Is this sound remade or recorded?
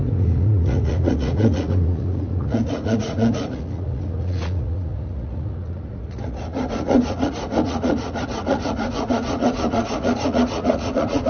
remade